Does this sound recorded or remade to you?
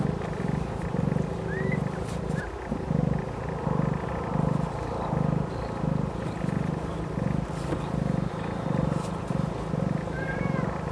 recorded